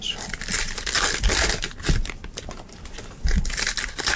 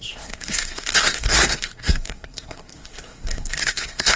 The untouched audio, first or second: first